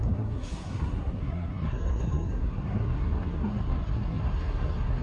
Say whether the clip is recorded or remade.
remade